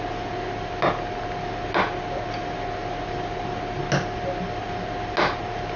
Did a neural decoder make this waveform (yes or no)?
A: no